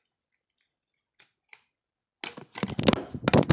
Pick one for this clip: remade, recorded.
recorded